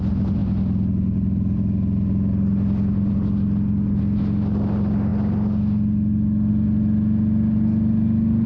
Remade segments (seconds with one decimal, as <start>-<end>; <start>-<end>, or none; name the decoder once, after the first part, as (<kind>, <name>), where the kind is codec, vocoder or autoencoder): none